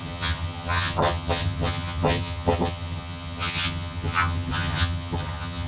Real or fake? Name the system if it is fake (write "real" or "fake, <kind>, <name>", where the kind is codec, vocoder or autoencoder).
fake, vocoder, HiFi-GAN